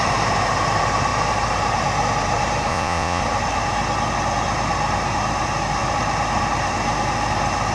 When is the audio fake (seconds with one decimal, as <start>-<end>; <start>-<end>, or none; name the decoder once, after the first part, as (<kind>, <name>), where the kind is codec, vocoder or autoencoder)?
2.7-3.2 (vocoder, Vocos)